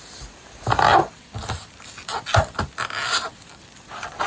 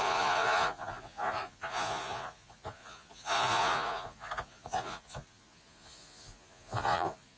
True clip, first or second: first